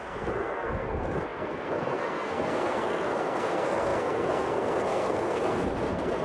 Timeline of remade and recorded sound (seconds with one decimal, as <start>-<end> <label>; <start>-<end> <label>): 0.0-6.2 remade